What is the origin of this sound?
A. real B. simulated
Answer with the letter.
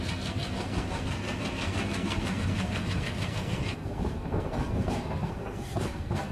B